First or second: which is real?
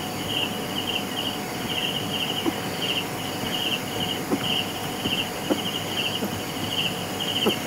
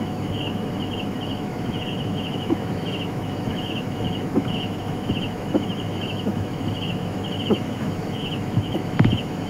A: first